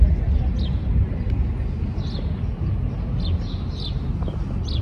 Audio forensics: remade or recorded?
recorded